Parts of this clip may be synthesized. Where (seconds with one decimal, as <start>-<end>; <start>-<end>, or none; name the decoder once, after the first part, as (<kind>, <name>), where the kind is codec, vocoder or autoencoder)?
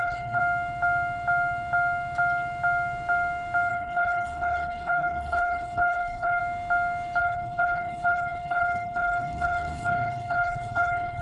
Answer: 0.0-0.4 (codec, HILCodec); 3.7-6.4; 7.2-11.2